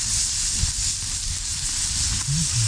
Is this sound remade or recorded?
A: recorded